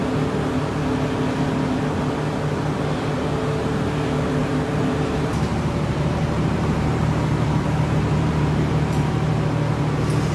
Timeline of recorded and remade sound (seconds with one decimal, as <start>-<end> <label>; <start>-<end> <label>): 0.0-4.4 recorded; 4.4-9.3 remade; 9.3-10.3 recorded